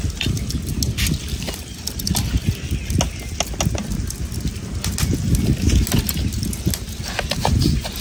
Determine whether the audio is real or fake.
real